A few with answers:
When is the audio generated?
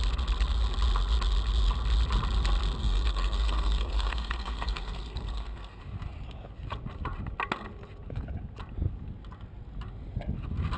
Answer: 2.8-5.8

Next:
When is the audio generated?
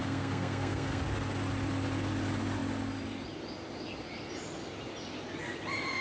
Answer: 0.0-1.0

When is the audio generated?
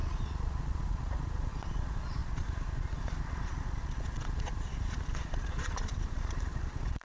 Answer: 0.0-7.0